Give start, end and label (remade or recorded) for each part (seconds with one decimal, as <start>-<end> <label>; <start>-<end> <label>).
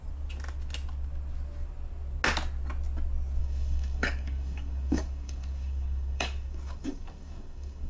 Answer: 0.0-3.4 recorded; 3.4-7.9 remade